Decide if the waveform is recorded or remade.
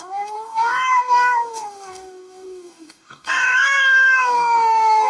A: remade